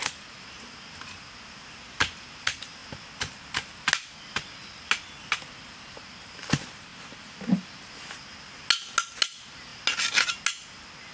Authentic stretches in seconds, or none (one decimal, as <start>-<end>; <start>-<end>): 0.0-11.1